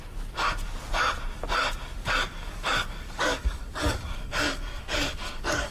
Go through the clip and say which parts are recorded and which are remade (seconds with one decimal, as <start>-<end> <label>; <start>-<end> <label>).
0.0-2.0 recorded; 2.0-5.7 remade